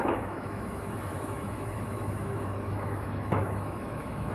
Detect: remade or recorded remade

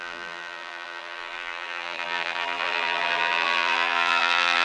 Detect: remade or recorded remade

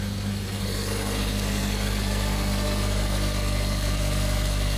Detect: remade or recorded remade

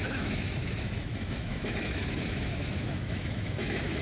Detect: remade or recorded remade